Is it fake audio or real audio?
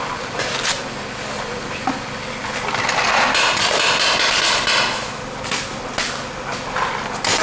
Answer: real